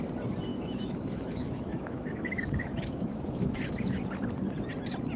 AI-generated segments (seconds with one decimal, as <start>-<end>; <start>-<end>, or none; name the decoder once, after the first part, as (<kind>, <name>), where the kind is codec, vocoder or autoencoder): 0.5-3.6 (autoencoder, DAC-VAE)